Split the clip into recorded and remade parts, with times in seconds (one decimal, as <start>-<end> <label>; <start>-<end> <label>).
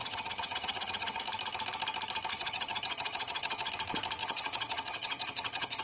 0.0-1.2 remade; 1.2-2.3 recorded; 2.3-3.7 remade; 3.7-4.2 recorded; 4.2-5.8 remade